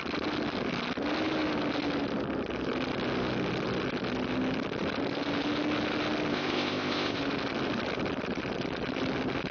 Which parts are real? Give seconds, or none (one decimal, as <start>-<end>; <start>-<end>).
0.0-6.3; 7.2-9.5